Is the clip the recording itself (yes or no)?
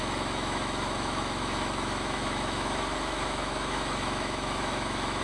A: no